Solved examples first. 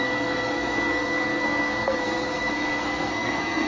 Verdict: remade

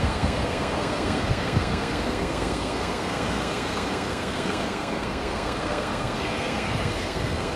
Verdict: remade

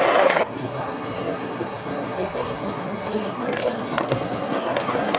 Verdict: remade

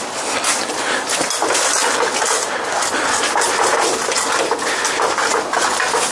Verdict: recorded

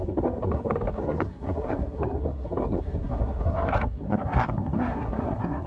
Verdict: remade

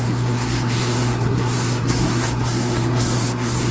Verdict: remade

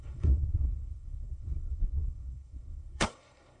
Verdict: remade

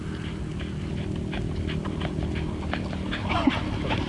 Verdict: recorded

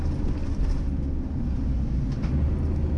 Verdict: recorded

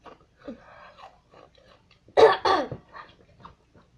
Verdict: recorded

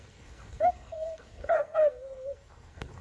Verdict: remade